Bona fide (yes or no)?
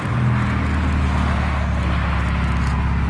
yes